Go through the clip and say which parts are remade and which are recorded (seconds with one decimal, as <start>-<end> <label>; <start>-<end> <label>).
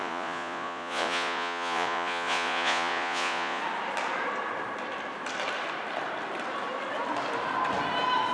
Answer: 0.0-3.6 remade; 3.6-8.3 recorded